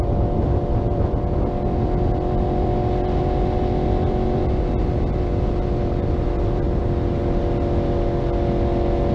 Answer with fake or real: real